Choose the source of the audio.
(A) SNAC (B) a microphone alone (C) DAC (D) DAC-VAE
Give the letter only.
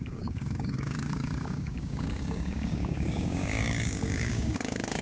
C